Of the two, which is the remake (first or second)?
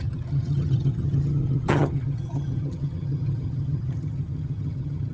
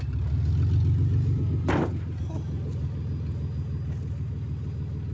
first